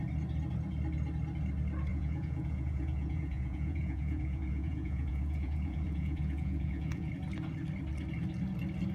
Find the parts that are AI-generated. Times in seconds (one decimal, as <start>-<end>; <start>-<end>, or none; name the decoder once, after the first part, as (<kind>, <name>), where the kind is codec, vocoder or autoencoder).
1.9-7.1 (vocoder, Vocos)